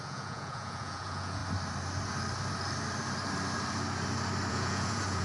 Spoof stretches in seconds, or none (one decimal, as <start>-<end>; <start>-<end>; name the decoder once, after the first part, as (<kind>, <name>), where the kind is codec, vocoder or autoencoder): 0.0-1.4 (vocoder, Vocos); 4.5-5.2